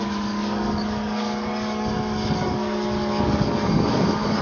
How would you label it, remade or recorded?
remade